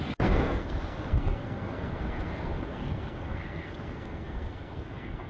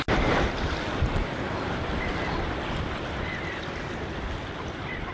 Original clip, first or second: second